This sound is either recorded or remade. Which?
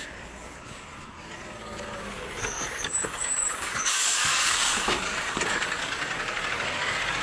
remade